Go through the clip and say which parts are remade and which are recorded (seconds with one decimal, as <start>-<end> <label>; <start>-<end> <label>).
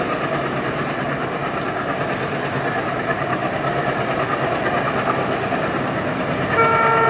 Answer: 0.0-1.4 remade; 1.4-2.8 recorded; 2.8-3.4 remade; 3.4-7.1 recorded